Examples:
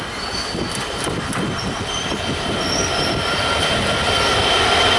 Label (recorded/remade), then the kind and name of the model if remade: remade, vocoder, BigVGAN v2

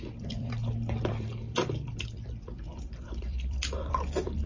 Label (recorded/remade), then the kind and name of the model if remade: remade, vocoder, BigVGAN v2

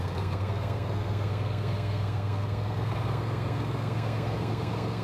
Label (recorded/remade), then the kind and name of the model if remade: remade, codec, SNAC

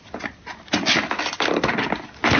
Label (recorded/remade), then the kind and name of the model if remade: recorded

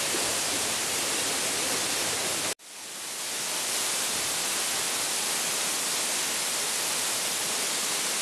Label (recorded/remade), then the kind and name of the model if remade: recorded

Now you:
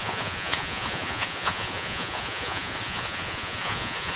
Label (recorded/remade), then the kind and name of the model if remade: remade, vocoder, Vocos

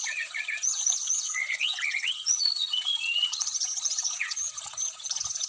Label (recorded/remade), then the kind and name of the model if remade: remade, vocoder, Vocos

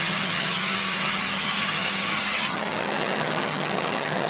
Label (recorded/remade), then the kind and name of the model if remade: remade, vocoder, HiFi-GAN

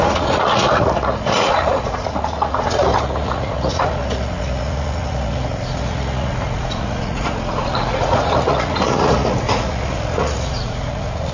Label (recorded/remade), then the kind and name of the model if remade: remade, vocoder, Vocos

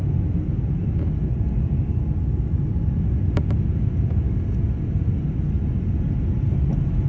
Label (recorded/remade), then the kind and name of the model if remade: recorded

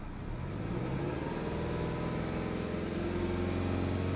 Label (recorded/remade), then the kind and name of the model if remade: recorded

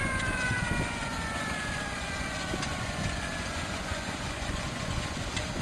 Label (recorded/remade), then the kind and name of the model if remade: remade, vocoder, Vocos